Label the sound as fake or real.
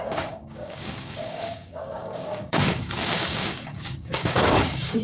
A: fake